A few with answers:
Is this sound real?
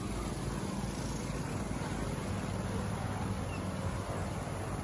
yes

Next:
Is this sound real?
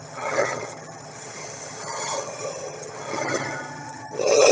no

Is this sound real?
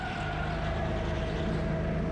yes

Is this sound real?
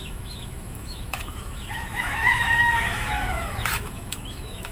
no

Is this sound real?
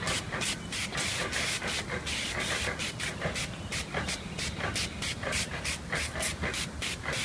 yes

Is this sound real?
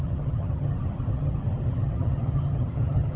no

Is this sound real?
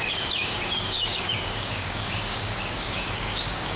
no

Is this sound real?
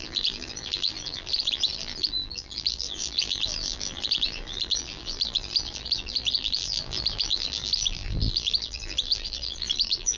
no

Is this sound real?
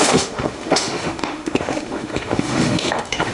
no